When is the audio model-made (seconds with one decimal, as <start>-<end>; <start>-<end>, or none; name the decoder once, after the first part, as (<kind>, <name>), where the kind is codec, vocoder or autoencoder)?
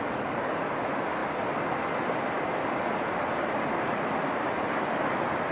none